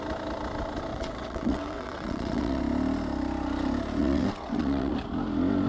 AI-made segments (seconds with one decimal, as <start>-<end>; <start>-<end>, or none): 0.9-2.6; 4.0-4.9